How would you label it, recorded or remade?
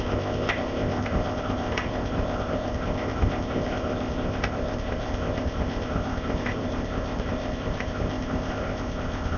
remade